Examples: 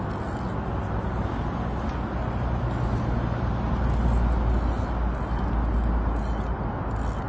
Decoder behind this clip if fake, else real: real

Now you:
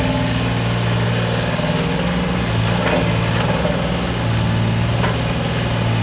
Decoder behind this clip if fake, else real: real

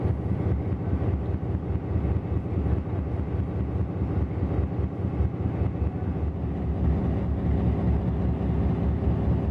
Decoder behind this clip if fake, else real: real